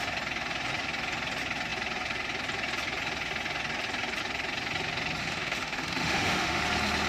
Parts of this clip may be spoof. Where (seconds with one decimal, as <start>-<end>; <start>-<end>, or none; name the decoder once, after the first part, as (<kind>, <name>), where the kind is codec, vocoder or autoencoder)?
5.2-6.6 (autoencoder, DAC-VAE)